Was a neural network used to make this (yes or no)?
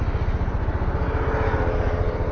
no